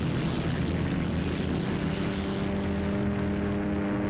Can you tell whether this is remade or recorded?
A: recorded